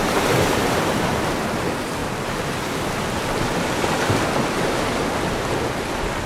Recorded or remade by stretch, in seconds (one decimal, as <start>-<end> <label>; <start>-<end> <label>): 0.0-1.1 remade; 1.1-6.3 recorded